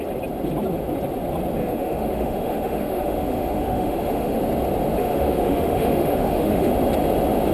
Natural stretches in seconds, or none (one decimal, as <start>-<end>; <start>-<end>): 0.0-1.6; 4.4-5.0; 6.7-7.5